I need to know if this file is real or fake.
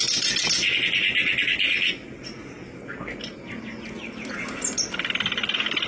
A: real